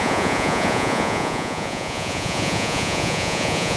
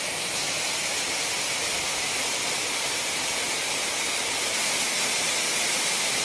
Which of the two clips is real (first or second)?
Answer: second